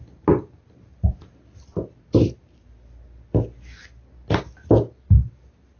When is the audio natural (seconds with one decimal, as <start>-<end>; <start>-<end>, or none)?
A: 0.0-5.8